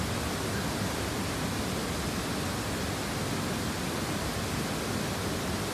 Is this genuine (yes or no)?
yes